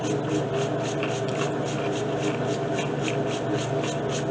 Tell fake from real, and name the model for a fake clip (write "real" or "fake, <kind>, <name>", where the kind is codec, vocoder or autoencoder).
real